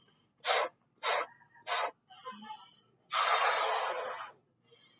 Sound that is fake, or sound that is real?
real